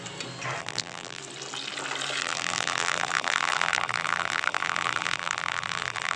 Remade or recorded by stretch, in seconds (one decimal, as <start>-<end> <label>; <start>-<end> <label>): 0.0-0.6 recorded; 0.6-1.2 remade; 1.2-2.2 recorded; 2.2-6.2 remade